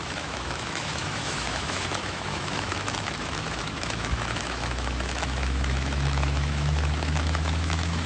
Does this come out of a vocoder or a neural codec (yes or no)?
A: yes